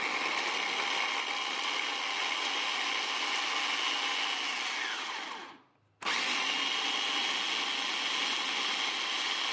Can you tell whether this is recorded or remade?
recorded